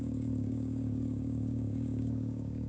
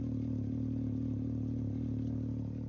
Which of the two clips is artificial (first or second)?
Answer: first